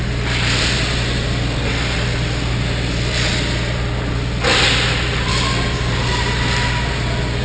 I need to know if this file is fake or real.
real